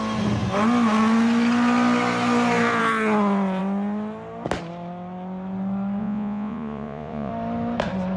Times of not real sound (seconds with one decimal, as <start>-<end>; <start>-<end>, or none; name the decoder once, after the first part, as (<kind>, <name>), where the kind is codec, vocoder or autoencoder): 6.0-7.3 (vocoder, Vocos)